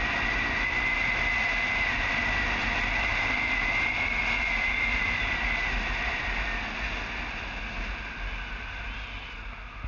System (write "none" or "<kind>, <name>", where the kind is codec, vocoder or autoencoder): none